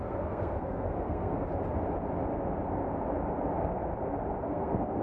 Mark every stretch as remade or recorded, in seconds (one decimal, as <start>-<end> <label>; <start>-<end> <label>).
0.0-1.4 remade; 1.4-4.4 recorded; 4.4-5.0 remade